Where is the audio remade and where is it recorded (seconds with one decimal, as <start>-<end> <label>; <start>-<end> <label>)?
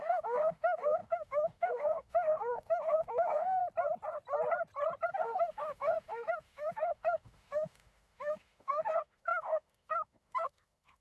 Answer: 0.0-3.6 remade; 3.6-5.1 recorded; 5.1-11.0 remade